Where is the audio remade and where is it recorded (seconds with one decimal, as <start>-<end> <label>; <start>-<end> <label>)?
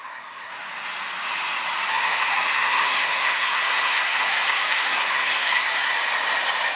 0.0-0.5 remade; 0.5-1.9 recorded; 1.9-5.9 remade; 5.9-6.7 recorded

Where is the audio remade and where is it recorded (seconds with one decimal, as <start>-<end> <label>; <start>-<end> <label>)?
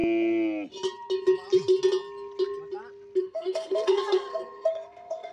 0.0-3.2 recorded; 3.2-5.3 remade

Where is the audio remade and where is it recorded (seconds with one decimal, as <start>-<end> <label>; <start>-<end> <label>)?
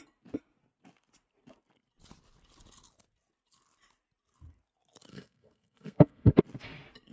0.0-5.1 recorded; 5.1-6.4 remade; 6.4-7.1 recorded